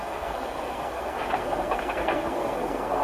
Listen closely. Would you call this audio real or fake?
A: fake